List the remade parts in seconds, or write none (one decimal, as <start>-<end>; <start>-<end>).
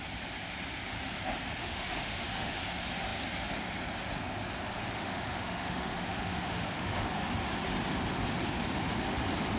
1.6-2.6; 4.7-7.1